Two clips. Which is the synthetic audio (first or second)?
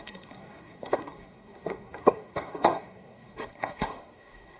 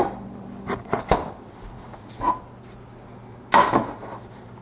first